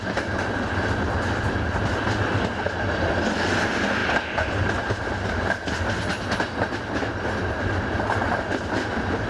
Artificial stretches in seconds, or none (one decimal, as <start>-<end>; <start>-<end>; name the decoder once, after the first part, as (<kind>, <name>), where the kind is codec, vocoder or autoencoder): none